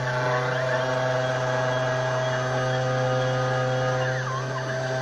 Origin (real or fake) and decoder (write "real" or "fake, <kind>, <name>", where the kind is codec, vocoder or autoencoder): real